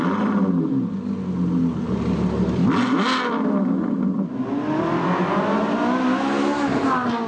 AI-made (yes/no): no